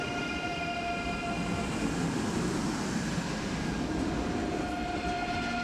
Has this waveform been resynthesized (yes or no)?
no